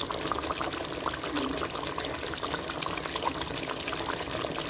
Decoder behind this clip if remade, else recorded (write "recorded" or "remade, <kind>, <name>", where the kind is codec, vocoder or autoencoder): recorded